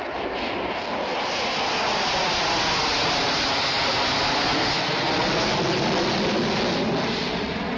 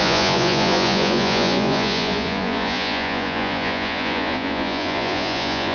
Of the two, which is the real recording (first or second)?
first